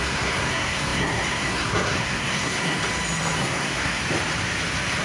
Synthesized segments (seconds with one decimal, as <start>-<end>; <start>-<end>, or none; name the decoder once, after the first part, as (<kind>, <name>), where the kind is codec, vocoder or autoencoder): 0.0-2.8 (codec, SNAC); 3.4-4.0